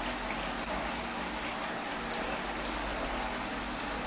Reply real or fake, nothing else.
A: real